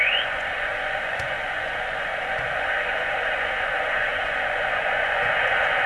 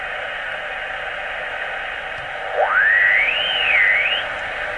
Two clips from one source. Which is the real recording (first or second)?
second